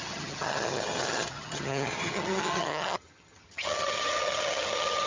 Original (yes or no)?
no